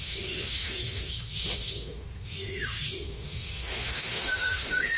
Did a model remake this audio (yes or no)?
yes